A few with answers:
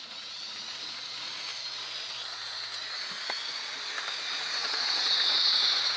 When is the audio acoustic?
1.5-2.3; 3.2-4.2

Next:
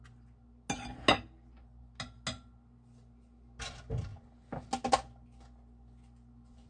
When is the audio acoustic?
0.0-6.7